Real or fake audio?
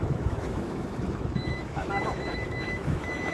fake